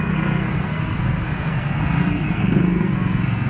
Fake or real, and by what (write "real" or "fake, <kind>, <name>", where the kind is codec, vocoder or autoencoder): fake, codec, SNAC